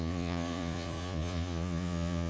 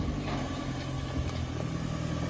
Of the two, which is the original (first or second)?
second